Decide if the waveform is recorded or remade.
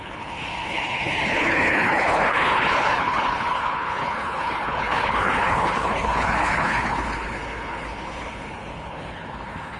remade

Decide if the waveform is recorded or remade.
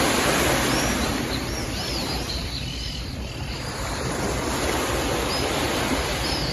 remade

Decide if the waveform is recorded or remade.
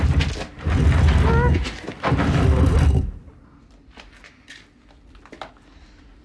recorded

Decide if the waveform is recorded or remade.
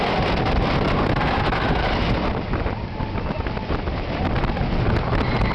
recorded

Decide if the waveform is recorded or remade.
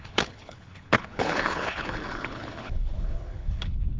remade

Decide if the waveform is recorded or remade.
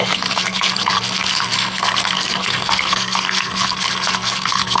remade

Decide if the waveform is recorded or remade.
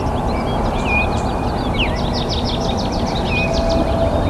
recorded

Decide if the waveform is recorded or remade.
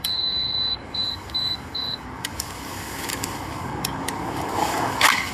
remade